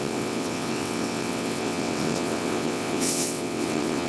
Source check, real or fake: fake